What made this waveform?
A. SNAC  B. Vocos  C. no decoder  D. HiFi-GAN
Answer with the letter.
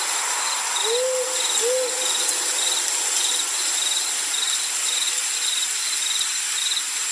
C